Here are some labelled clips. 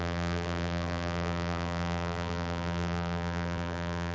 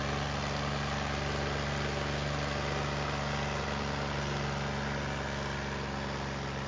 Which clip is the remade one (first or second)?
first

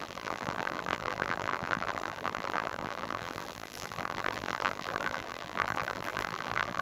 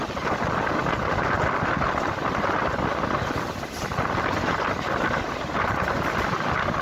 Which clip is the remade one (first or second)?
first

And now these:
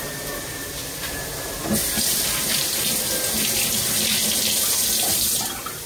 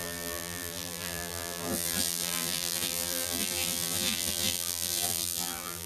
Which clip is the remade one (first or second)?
second